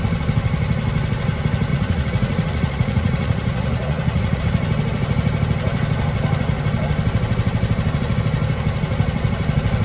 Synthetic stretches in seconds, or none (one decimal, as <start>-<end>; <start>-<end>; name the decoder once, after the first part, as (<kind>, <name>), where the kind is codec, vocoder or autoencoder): 1.7-4.4 (vocoder, Vocos)